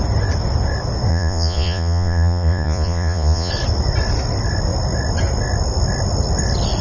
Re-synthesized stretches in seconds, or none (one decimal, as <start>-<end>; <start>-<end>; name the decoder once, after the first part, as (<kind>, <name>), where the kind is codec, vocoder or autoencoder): 1.1-3.5 (vocoder, Vocos)